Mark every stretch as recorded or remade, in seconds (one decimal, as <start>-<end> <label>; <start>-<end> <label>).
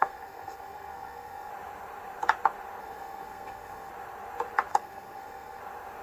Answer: 0.0-1.5 remade; 1.5-2.8 recorded; 2.8-3.9 remade; 3.9-4.7 recorded; 4.7-5.6 remade; 5.6-6.0 recorded